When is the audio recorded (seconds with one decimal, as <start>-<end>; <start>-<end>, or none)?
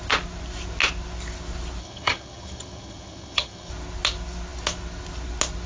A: 0.0-1.8; 3.7-5.7